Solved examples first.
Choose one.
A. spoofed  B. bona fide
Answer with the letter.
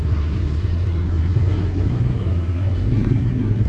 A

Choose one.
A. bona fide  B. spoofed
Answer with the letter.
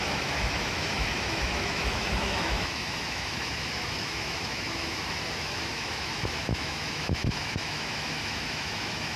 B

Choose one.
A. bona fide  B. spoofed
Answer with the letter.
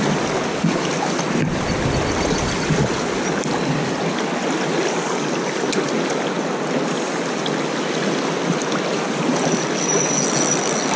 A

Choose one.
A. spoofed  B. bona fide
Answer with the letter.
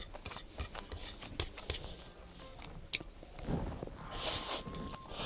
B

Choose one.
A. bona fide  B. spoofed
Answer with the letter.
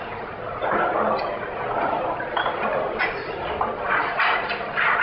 A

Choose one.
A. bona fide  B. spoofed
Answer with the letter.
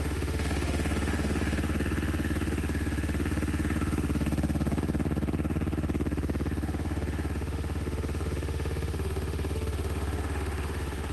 B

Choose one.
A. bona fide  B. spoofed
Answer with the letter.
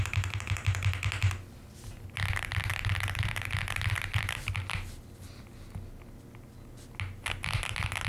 A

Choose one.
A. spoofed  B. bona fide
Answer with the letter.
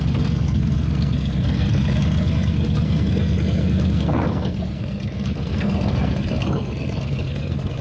A